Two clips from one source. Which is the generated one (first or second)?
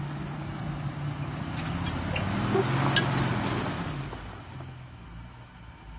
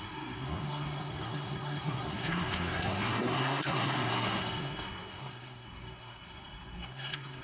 second